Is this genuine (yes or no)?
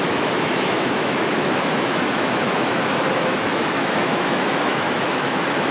no